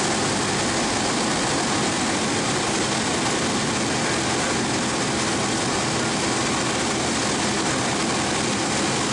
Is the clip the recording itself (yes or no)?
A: yes